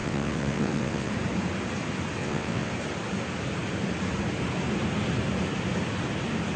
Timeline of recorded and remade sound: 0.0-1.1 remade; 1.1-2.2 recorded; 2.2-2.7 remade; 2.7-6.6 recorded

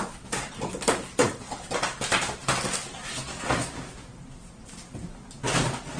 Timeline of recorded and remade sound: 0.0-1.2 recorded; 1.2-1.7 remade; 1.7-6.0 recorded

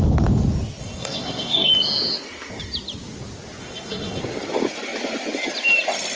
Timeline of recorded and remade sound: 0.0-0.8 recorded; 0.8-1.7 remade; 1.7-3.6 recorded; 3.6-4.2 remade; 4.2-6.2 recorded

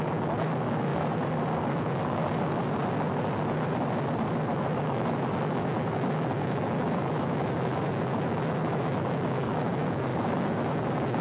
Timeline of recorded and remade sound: 0.0-0.9 remade; 0.9-1.7 recorded; 1.7-2.2 remade; 2.2-4.8 recorded; 4.8-11.2 remade